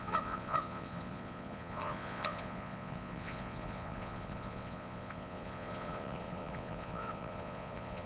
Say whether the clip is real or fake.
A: fake